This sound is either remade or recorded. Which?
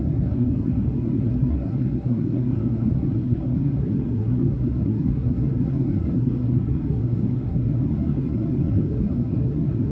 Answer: remade